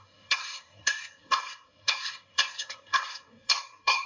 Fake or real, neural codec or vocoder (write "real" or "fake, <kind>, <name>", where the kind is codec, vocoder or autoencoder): fake, codec, SNAC